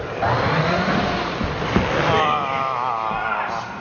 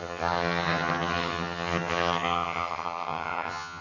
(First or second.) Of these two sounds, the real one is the first